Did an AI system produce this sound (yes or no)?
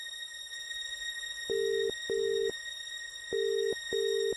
no